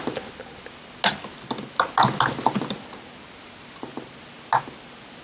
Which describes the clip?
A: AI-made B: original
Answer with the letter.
B